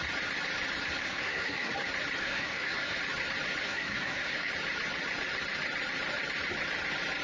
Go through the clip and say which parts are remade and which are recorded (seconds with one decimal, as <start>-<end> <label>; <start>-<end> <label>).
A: 0.0-1.0 recorded; 1.0-1.7 remade; 1.7-2.2 recorded; 2.2-3.0 remade; 3.0-3.6 recorded; 3.6-4.5 remade; 4.5-7.2 recorded